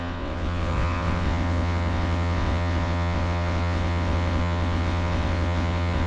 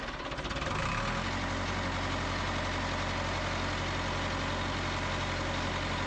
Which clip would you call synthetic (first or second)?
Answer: first